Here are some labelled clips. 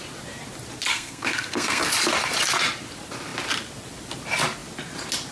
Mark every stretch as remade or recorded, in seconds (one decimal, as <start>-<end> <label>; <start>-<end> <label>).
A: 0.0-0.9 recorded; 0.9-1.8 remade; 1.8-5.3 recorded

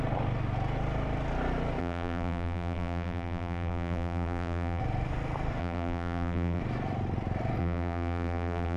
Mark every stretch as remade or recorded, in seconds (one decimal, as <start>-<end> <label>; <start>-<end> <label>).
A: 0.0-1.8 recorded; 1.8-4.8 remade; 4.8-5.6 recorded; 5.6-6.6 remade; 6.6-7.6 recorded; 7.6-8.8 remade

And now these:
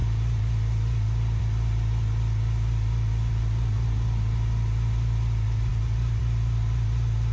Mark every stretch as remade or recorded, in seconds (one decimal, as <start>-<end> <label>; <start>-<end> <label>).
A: 0.0-7.3 recorded

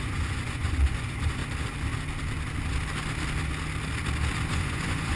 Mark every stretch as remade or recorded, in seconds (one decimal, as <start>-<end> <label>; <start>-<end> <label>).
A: 0.0-1.4 remade; 1.4-4.5 recorded; 4.5-5.2 remade

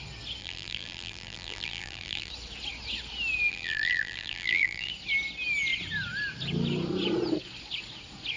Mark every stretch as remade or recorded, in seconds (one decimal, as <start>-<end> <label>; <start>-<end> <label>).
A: 0.0-0.4 recorded; 0.4-2.3 remade; 2.3-3.5 recorded; 3.5-4.9 remade; 4.9-8.4 recorded

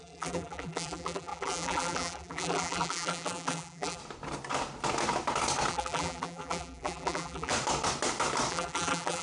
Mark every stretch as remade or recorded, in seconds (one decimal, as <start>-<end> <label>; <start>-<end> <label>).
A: 0.0-4.0 remade; 4.0-5.7 recorded; 5.7-7.5 remade; 7.5-8.5 recorded; 8.5-9.2 remade

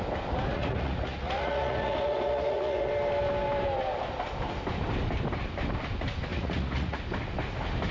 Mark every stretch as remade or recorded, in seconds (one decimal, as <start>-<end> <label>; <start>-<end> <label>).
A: 0.0-0.5 recorded; 0.5-2.9 remade; 2.9-6.3 recorded; 6.3-7.0 remade; 7.0-7.9 recorded